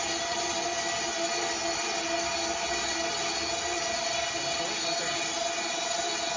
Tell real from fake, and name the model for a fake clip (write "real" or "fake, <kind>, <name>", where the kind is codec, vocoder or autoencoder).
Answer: real